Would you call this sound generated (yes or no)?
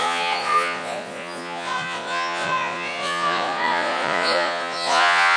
yes